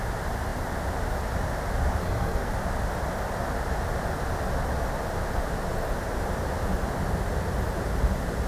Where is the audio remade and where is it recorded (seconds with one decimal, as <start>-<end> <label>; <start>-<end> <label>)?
0.0-2.0 recorded; 2.0-2.5 remade; 2.5-8.5 recorded